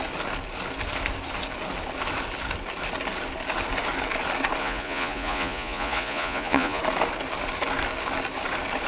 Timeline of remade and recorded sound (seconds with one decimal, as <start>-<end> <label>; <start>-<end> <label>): 0.0-4.6 recorded; 4.6-6.8 remade; 6.8-8.9 recorded